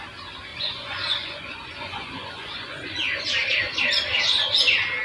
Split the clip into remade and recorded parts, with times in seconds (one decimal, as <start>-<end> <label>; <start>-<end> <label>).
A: 0.0-0.5 recorded; 0.5-3.2 remade; 3.2-5.0 recorded